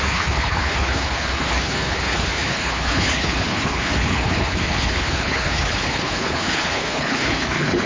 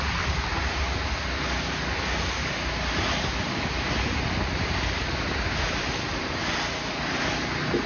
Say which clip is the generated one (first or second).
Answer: first